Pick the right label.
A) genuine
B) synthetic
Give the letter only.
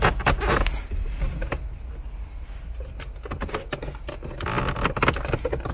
A